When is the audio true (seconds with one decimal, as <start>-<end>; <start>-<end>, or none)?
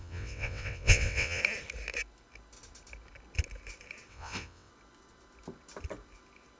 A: 1.4-4.1; 4.7-6.6